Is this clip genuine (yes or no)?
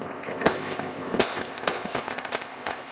no